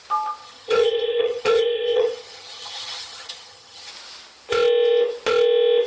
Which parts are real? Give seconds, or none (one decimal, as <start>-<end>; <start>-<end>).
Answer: 0.0-0.4; 3.9-5.9